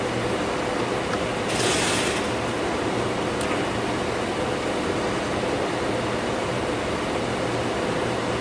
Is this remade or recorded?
recorded